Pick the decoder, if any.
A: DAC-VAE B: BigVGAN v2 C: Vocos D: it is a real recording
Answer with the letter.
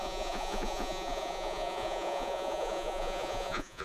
C